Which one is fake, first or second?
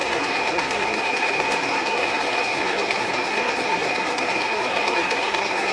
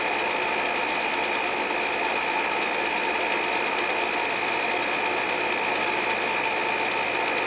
first